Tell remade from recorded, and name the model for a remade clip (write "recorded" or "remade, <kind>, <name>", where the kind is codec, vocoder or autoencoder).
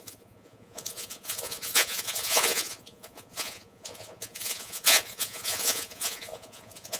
remade, vocoder, Vocos